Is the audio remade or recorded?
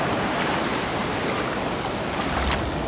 recorded